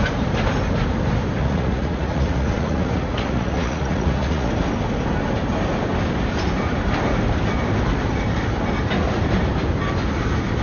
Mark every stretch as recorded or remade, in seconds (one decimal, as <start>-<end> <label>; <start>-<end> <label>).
0.0-1.4 recorded; 1.4-4.5 remade; 4.5-10.6 recorded